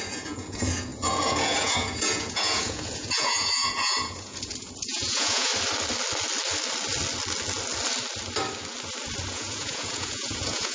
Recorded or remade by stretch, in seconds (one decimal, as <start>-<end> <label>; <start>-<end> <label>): 0.0-5.5 remade; 5.5-9.3 recorded; 9.3-10.7 remade